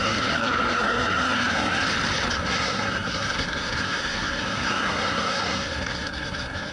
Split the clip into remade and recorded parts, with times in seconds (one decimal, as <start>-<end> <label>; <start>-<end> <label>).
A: 0.0-1.8 remade; 1.8-2.3 recorded; 2.3-6.7 remade

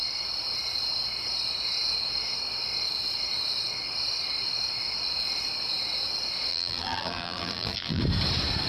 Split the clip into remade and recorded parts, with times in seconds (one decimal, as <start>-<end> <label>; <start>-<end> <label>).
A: 0.0-6.5 recorded; 6.5-8.0 remade; 8.0-8.7 recorded